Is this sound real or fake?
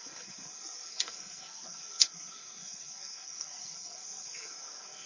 fake